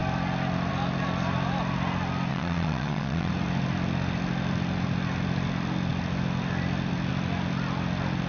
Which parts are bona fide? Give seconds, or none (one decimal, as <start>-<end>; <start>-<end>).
0.0-2.3; 3.3-8.3